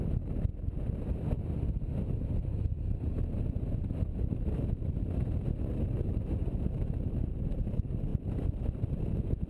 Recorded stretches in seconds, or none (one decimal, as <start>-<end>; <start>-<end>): 0.0-9.5